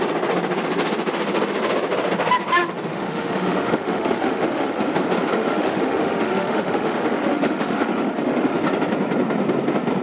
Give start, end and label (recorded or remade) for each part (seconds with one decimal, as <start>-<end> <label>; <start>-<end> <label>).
0.0-2.9 recorded; 2.9-4.7 remade; 4.7-5.4 recorded; 5.4-8.6 remade; 8.6-10.0 recorded